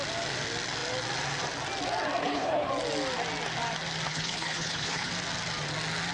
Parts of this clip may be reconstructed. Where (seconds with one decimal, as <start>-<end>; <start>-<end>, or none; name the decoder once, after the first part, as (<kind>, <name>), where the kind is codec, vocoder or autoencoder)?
2.2-2.7 (codec, HILCodec); 4.1-5.1